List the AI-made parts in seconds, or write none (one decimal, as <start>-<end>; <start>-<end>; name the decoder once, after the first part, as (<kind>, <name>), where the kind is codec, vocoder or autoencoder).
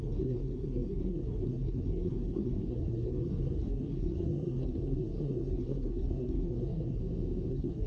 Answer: 0.0-7.0 (codec, SNAC); 7.5-7.9